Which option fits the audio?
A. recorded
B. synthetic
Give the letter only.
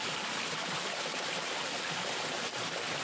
A